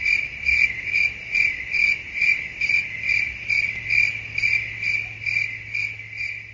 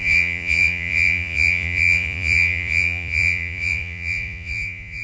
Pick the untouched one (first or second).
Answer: first